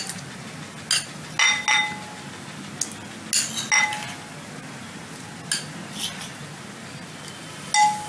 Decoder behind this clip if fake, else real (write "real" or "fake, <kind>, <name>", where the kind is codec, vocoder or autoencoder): real